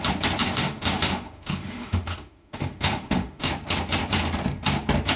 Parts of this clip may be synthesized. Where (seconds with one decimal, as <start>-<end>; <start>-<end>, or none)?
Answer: 0.4-3.5